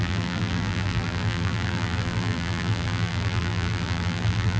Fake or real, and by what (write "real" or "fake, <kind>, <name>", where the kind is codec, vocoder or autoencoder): fake, vocoder, BigVGAN v2